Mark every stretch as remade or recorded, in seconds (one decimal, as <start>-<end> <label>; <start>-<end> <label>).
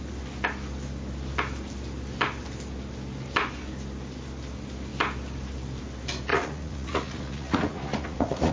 0.0-6.3 recorded; 6.3-8.5 remade